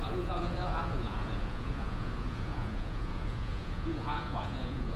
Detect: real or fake fake